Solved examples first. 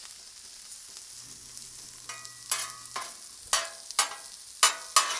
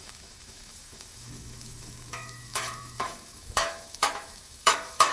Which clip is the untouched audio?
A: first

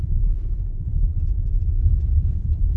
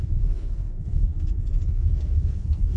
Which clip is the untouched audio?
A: first